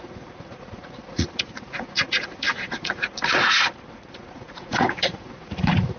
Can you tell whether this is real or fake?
fake